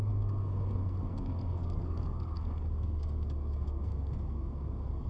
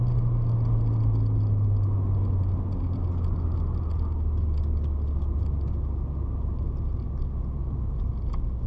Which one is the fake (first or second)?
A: first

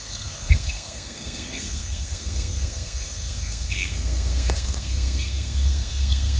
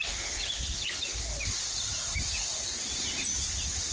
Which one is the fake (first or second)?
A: first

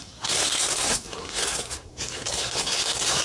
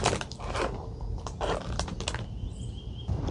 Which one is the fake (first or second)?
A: first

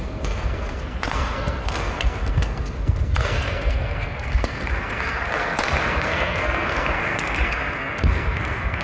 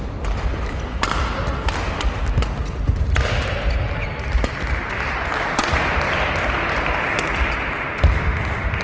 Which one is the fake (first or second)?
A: first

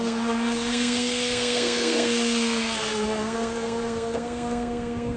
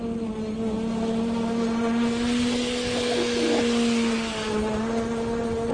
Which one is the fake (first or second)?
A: first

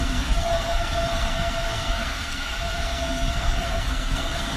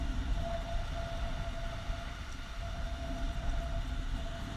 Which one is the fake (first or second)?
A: first